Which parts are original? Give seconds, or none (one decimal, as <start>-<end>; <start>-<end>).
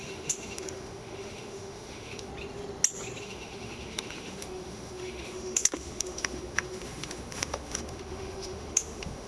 2.3-3.2